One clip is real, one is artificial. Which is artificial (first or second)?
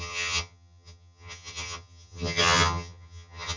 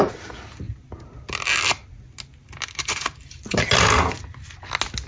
first